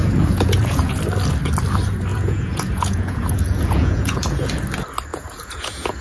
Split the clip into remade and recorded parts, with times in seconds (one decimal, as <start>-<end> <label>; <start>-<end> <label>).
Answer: 0.0-1.0 remade; 1.0-2.1 recorded; 2.1-4.5 remade; 4.5-5.1 recorded; 5.1-6.0 remade